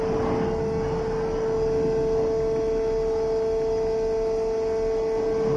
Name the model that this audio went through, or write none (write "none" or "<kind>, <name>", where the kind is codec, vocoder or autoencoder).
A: none